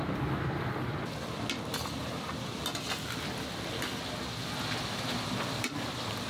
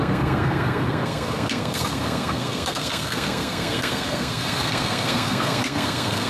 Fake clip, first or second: second